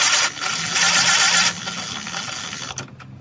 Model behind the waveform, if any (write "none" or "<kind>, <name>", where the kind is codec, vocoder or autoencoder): none